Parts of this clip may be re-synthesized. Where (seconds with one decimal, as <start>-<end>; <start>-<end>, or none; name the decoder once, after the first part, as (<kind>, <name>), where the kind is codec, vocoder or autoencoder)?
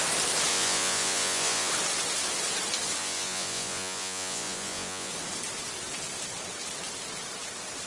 0.5-1.7 (vocoder, Vocos); 3.0-5.1